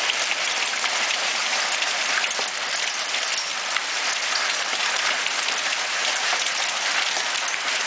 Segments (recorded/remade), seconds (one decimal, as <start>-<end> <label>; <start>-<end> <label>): 0.0-0.7 recorded; 0.7-1.6 remade; 1.6-3.8 recorded; 3.8-7.0 remade; 7.0-7.9 recorded